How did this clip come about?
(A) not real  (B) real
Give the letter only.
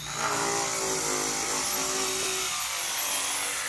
B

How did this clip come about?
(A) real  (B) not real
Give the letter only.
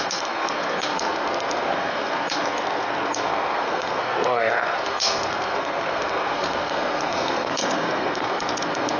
B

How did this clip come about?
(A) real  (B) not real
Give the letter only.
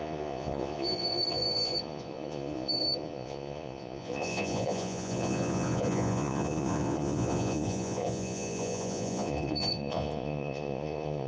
B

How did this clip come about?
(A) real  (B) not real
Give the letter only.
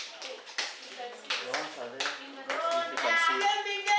A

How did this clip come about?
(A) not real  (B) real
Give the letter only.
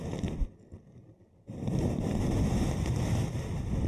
B